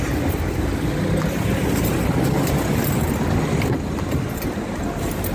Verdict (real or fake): real